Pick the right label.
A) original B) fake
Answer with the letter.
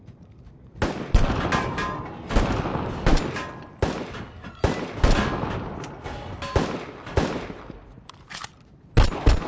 A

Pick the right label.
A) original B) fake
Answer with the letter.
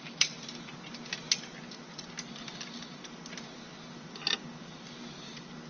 A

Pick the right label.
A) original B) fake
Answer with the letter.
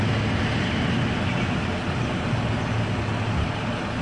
A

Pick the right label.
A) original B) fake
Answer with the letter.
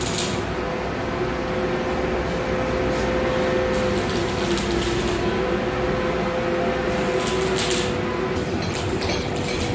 A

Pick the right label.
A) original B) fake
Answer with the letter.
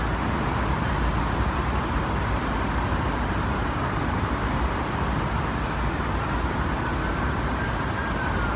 A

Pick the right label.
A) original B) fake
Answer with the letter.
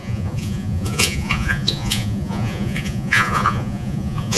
B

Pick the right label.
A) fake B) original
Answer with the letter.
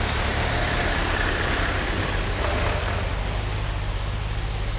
B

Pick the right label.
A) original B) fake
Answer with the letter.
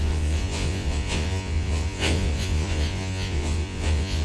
B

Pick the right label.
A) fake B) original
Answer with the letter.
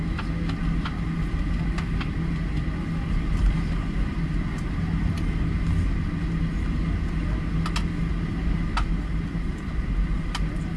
B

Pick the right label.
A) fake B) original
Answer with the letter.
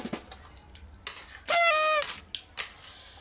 B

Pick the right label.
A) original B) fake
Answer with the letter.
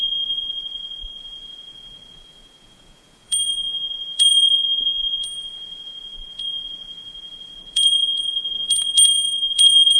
B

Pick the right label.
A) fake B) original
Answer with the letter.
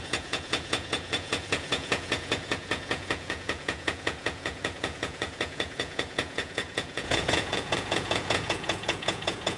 A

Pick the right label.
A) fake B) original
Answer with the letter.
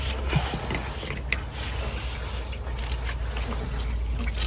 B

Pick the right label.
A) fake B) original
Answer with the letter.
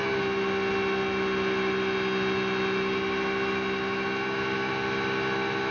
B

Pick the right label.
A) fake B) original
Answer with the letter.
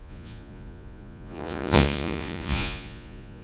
A